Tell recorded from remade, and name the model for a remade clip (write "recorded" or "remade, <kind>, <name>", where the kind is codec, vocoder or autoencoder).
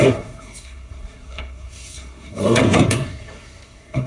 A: remade, codec, SNAC